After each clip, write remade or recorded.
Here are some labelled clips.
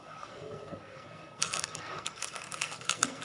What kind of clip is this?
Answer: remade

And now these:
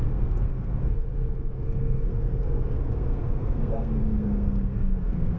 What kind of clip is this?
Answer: remade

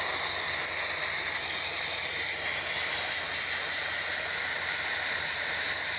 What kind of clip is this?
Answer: recorded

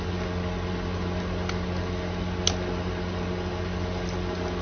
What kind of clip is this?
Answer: recorded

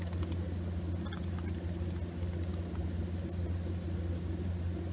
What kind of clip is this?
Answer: recorded